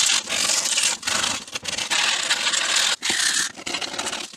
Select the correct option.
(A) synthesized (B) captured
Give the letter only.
B